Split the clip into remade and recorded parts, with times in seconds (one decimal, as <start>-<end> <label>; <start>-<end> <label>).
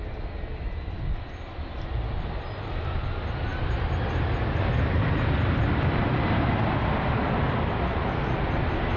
0.0-9.0 recorded